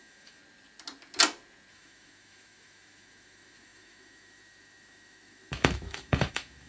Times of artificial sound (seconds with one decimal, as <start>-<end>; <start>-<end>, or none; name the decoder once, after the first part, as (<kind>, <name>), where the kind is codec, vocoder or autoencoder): 0.0-0.4 (autoencoder, DAC-VAE); 1.7-6.7